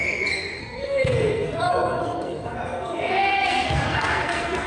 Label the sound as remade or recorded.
remade